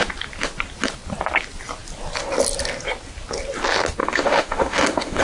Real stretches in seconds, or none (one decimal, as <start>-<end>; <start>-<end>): 0.0-4.0